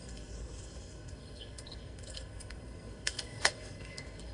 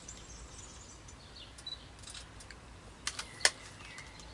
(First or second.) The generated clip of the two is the first